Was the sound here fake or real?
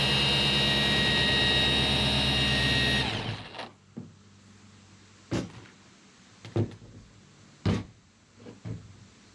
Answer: real